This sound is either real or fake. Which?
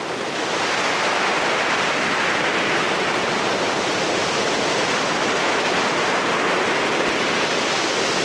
real